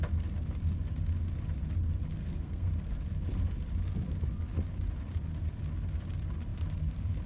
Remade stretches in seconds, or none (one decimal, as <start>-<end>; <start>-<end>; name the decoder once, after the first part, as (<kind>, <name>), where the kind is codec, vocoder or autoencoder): 2.2-2.7 (codec, SNAC)